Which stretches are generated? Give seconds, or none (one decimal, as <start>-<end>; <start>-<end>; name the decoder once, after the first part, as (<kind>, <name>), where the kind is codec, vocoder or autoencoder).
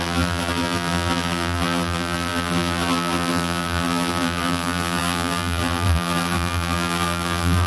0.0-7.7 (vocoder, BigVGAN v2)